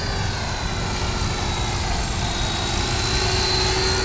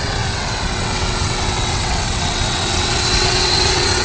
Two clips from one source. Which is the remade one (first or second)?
second